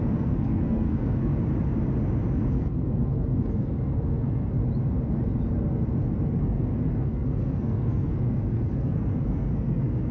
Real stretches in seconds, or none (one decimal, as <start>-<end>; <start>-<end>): 1.3-2.5; 4.6-6.4